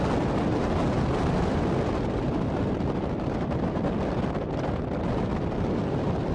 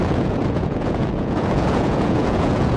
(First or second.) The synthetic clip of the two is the second